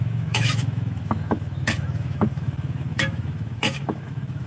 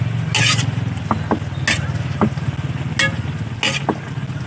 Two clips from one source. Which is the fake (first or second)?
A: first